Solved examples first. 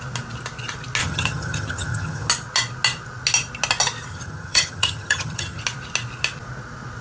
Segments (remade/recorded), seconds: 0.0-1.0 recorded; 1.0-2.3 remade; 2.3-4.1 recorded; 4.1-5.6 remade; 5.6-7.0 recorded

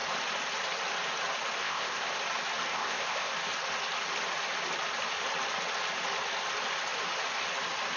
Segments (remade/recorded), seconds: 0.0-1.6 recorded; 1.6-2.1 remade; 2.1-2.7 recorded; 2.7-3.3 remade; 3.3-8.0 recorded

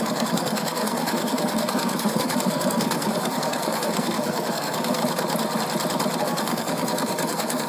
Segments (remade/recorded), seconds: 0.0-5.0 remade; 5.0-6.2 recorded; 6.2-7.7 remade

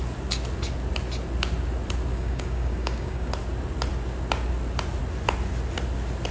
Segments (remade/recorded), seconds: 0.0-2.1 recorded; 2.1-3.3 remade; 3.3-6.3 recorded

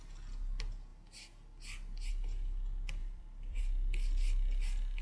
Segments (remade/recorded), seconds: 0.0-3.0 recorded; 3.0-3.6 remade; 3.6-5.0 recorded